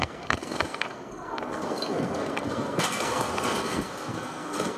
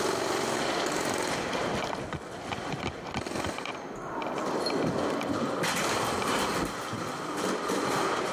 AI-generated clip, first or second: first